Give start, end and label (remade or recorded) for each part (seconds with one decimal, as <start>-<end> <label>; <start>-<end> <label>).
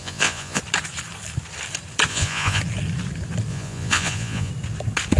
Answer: 0.0-0.6 remade; 0.6-2.1 recorded; 2.1-2.6 remade; 2.6-3.5 recorded; 3.5-4.5 remade; 4.5-5.2 recorded